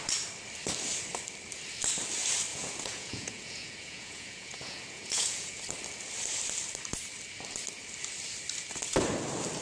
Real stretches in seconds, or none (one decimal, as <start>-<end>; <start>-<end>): 0.0-2.5; 5.6-9.6

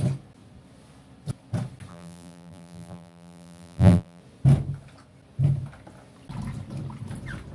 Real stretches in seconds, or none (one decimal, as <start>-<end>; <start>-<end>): 0.0-1.9; 4.2-7.5

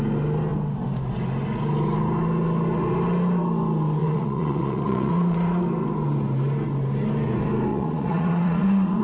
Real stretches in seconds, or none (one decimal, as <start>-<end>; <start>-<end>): 0.0-4.0; 5.6-7.7

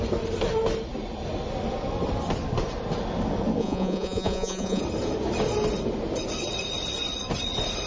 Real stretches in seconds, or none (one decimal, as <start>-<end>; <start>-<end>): 0.0-3.6; 4.8-7.9

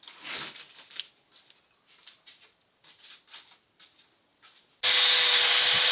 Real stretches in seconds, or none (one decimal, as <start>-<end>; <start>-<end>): 0.0-5.9

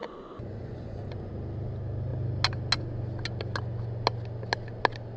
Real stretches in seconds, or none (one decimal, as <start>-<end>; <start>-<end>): 1.3-5.2

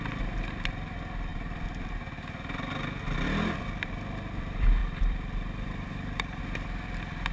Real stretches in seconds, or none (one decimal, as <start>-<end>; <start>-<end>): 0.0-4.8; 6.4-7.3